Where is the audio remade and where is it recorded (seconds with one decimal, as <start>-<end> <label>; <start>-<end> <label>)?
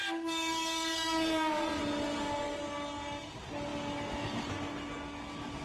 0.0-1.8 remade; 1.8-5.6 recorded